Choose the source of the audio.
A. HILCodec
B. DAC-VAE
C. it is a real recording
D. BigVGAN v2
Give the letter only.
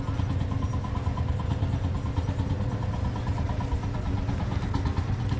C